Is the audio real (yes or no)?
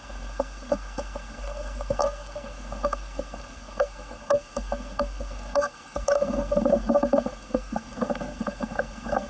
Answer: no